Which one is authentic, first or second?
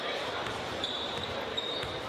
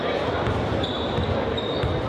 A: second